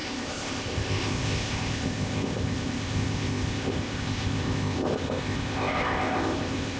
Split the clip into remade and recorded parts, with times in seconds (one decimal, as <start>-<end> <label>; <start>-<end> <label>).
0.0-6.8 remade

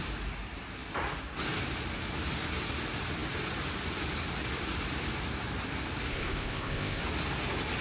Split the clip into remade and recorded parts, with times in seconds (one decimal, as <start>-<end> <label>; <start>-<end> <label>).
0.0-6.1 recorded; 6.1-7.0 remade; 7.0-7.8 recorded

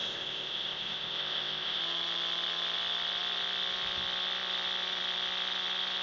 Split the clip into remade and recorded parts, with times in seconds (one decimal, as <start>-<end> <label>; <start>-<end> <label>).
0.0-1.8 remade; 1.8-6.0 recorded